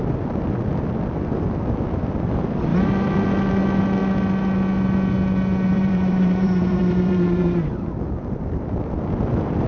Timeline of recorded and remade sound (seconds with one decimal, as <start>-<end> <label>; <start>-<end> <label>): 0.0-5.7 recorded; 5.7-7.7 remade; 7.7-9.7 recorded